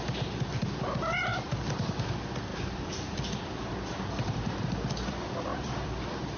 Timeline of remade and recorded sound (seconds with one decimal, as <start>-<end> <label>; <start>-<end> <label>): 0.0-1.3 recorded; 1.3-2.0 remade; 2.0-2.5 recorded; 2.5-6.4 remade